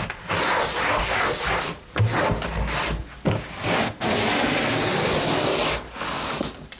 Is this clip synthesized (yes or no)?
no